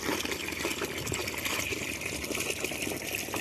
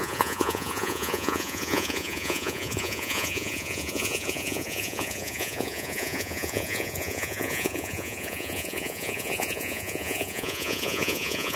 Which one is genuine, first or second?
first